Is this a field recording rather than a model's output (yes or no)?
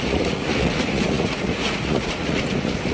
no